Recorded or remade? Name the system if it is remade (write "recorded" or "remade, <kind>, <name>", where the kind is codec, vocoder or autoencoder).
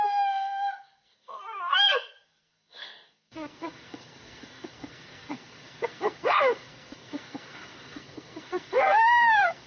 remade, codec, SNAC